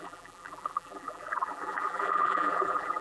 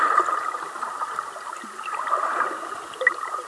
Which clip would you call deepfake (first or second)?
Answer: first